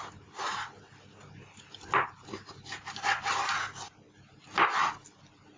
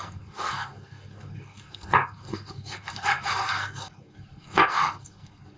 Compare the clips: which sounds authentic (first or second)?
first